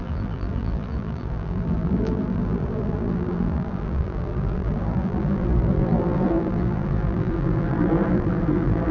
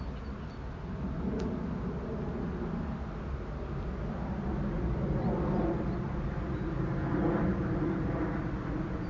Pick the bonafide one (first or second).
second